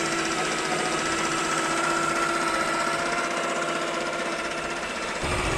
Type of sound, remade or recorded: recorded